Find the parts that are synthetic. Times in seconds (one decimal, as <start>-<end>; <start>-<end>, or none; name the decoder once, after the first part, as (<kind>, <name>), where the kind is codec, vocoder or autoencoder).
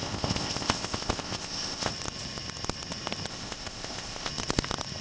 0.0-1.9 (codec, ZipCodec); 3.3-4.3